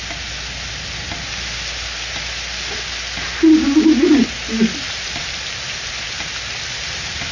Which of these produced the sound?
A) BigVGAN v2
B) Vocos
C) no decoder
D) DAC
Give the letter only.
C